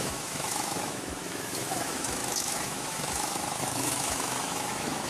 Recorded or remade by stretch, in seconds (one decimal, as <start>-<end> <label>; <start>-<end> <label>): 0.0-5.1 remade